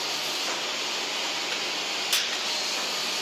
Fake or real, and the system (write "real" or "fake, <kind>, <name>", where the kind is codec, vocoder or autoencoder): real